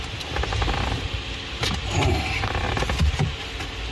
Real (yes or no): yes